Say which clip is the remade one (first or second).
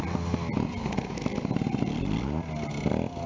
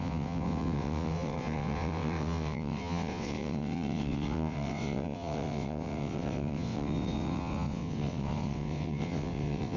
second